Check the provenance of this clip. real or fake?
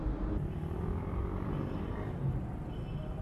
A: real